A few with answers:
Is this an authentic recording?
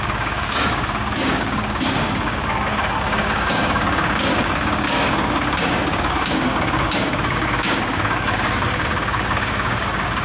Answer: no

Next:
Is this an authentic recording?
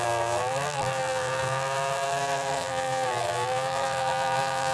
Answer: no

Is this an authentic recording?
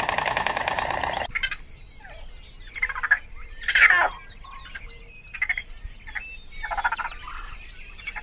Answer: no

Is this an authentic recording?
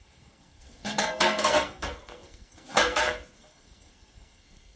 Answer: no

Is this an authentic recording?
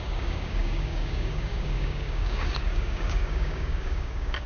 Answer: no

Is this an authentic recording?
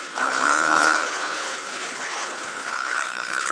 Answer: no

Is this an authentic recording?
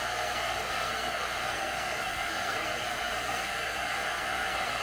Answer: no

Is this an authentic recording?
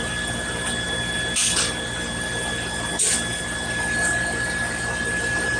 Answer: yes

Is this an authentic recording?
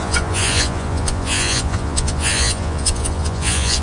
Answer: no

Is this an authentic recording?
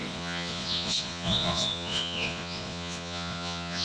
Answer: no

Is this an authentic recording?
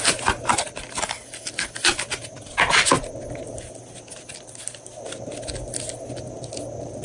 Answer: yes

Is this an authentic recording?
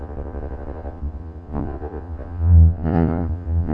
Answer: no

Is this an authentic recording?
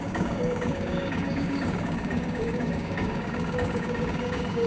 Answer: no